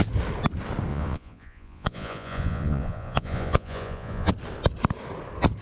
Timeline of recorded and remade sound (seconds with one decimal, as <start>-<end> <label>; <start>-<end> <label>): 0.0-0.9 recorded; 0.9-4.3 remade; 4.3-5.6 recorded